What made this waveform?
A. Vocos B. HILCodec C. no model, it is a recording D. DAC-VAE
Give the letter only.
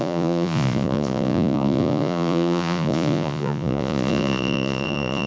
A